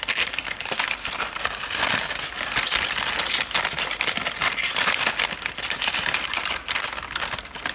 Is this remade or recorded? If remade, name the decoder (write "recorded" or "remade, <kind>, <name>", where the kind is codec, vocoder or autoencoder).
recorded